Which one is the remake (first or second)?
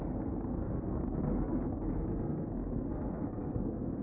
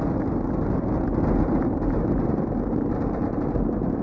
first